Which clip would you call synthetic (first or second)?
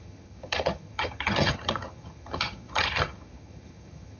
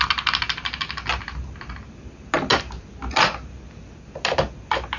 first